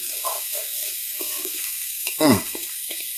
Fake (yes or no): yes